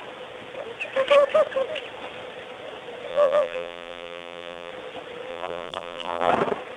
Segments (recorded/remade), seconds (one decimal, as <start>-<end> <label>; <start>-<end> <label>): 0.0-3.1 recorded; 3.1-4.7 remade; 4.7-5.3 recorded; 5.3-6.3 remade; 6.3-6.8 recorded